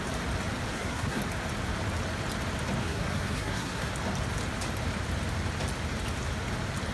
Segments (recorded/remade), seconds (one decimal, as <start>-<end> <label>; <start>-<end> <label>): 0.0-0.7 recorded; 0.7-1.2 remade; 1.2-2.8 recorded; 2.8-3.9 remade; 3.9-6.9 recorded